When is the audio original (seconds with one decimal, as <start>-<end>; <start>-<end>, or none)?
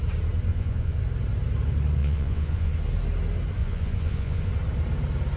0.0-0.5; 1.0-2.0; 2.7-3.6; 4.5-5.4